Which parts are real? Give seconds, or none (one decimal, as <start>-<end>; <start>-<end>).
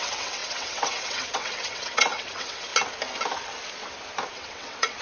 2.7-4.3